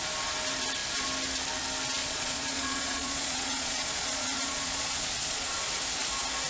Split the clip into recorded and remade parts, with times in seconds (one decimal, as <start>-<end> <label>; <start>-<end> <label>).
0.0-2.0 recorded; 2.0-5.7 remade; 5.7-6.5 recorded